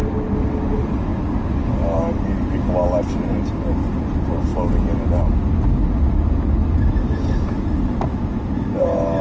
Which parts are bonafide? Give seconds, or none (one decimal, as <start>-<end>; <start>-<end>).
0.0-9.2